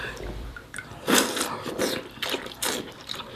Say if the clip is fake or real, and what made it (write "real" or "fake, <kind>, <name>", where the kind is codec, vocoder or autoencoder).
fake, vocoder, BigVGAN v2